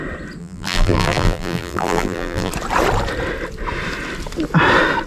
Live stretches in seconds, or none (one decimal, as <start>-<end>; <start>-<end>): 0.0-0.4; 2.5-5.1